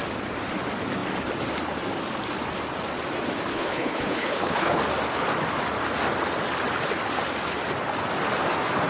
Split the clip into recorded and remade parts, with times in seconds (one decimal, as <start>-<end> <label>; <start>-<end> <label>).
0.0-3.5 recorded; 3.5-4.8 remade; 4.8-8.9 recorded